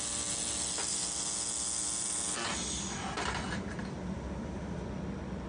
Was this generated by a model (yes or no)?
no